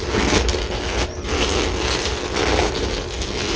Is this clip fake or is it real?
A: real